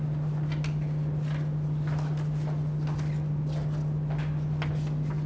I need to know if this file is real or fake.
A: real